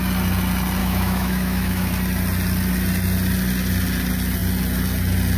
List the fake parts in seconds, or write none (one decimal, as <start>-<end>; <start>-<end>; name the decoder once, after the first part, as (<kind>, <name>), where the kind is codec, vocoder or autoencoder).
0.8-1.9 (autoencoder, DAC-VAE)